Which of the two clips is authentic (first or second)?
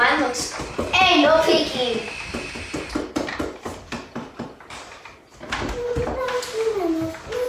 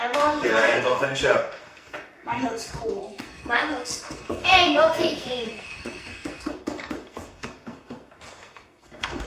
first